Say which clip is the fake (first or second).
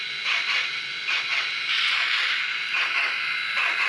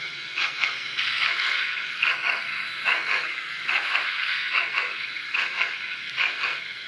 second